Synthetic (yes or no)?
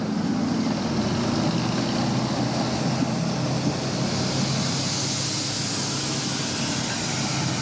no